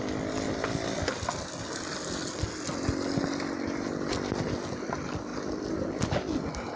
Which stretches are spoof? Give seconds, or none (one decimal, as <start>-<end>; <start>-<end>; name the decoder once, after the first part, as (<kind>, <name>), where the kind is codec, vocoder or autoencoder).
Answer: none